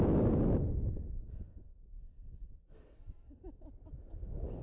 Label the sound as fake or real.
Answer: real